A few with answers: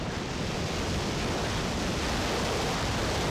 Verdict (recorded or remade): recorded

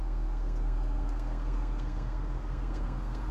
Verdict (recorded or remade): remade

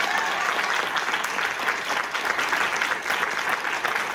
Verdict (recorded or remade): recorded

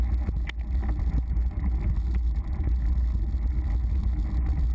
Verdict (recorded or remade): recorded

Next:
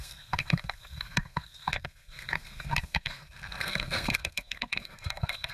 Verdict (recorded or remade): remade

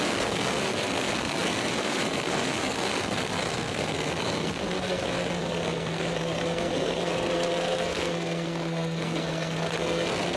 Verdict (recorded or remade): remade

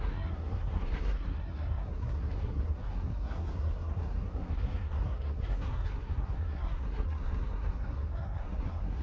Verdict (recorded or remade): remade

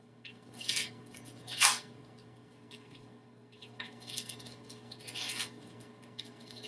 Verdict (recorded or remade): remade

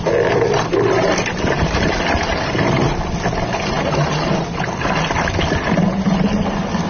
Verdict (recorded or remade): recorded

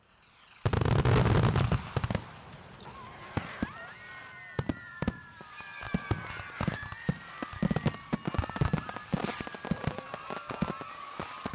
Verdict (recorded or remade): recorded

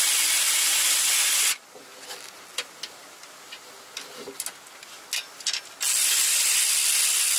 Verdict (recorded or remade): recorded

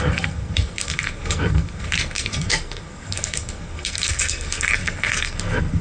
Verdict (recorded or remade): remade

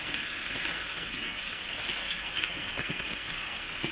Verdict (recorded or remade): remade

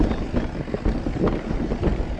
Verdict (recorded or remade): recorded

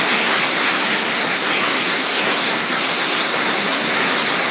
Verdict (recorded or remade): remade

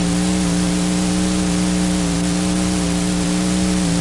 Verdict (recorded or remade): recorded